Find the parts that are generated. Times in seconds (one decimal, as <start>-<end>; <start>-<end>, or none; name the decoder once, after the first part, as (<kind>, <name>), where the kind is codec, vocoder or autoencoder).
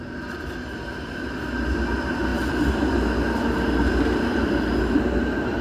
none